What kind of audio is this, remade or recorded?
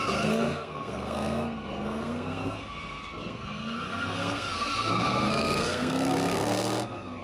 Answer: remade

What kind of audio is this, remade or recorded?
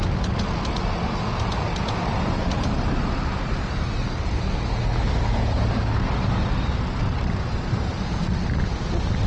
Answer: recorded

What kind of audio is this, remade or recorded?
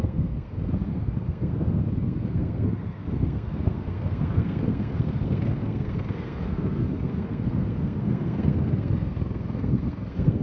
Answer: remade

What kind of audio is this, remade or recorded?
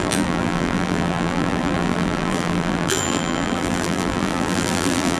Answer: remade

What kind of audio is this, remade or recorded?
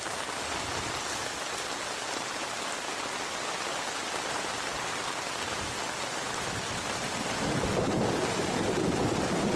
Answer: recorded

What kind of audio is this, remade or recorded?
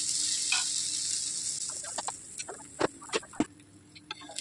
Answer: recorded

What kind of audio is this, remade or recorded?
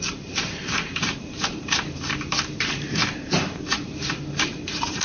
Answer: remade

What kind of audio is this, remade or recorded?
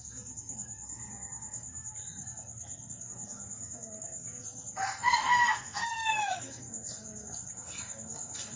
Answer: remade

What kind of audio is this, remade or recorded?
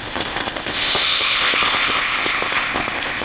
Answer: remade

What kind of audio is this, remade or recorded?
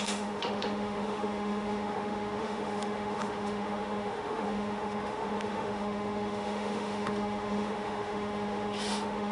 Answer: remade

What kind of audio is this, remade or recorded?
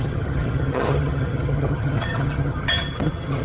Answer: remade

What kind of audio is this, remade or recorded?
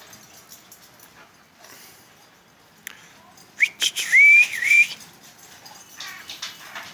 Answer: recorded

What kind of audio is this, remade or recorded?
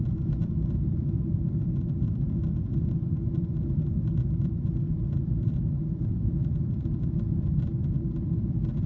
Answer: recorded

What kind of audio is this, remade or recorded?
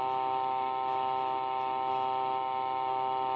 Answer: remade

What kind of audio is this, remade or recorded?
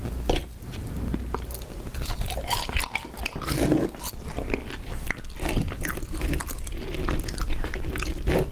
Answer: recorded